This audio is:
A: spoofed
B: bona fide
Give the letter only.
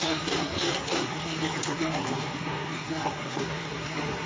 A